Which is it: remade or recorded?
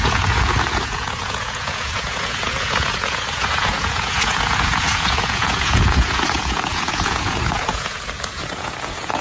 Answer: remade